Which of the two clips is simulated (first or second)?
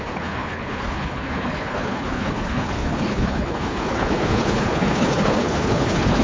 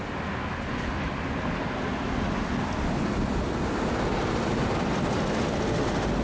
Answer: first